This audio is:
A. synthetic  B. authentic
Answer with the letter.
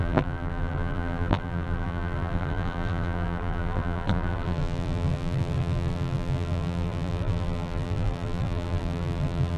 A